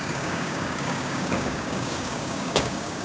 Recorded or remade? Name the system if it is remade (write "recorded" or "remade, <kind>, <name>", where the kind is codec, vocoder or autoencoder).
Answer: remade, codec, DAC